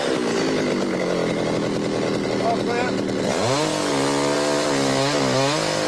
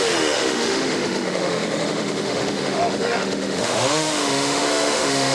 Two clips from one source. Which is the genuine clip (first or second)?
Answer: first